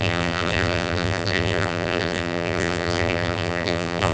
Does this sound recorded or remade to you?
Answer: remade